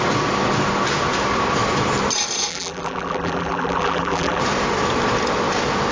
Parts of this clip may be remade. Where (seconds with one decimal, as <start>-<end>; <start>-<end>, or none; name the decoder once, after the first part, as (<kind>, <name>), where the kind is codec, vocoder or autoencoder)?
2.5-4.4 (vocoder, BigVGAN v2)